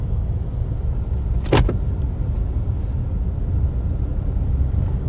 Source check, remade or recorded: recorded